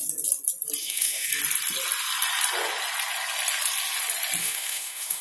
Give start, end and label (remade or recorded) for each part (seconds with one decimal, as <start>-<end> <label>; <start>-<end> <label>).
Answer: 0.0-0.8 recorded; 0.8-1.3 remade; 1.3-4.4 recorded; 4.4-5.2 remade